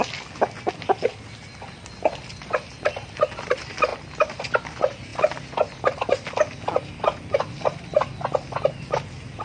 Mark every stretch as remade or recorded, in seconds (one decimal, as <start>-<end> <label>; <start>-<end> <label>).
0.0-9.4 recorded